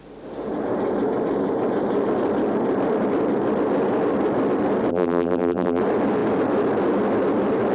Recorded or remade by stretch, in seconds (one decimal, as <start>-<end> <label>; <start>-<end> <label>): 0.0-4.9 recorded; 4.9-5.8 remade; 5.8-7.7 recorded

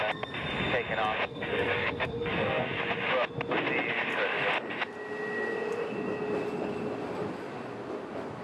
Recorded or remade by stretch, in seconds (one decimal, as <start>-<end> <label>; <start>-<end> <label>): 0.0-1.3 recorded; 1.3-2.8 remade; 2.8-8.4 recorded

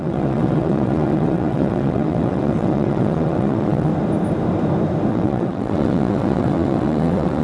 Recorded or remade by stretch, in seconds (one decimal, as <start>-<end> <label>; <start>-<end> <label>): 0.0-3.9 remade; 3.9-5.1 recorded; 5.1-7.4 remade

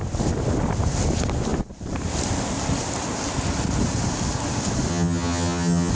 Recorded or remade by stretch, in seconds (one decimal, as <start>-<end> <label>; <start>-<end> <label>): 0.0-4.9 recorded; 4.9-5.9 remade

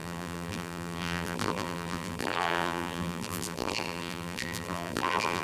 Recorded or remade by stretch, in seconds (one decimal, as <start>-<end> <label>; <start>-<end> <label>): 0.0-5.4 remade

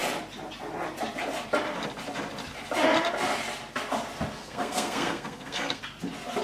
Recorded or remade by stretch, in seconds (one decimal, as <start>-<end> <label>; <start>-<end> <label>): 0.0-4.4 recorded; 4.4-5.8 remade; 5.8-6.4 recorded